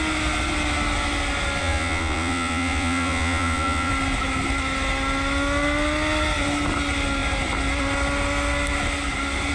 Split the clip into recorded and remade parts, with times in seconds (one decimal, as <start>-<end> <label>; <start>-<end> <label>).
0.0-1.6 recorded; 1.6-3.9 remade; 3.9-9.5 recorded